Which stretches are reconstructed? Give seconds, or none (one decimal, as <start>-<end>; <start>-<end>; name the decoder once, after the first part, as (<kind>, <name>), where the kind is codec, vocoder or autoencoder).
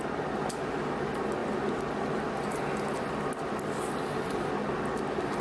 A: none